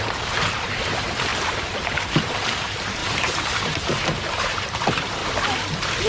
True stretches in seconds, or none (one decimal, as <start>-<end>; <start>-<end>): 5.2-6.1